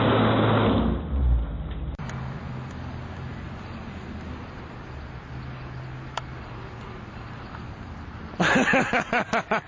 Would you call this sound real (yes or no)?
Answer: yes